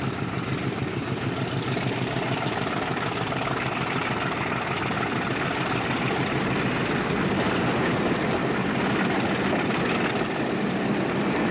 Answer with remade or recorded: recorded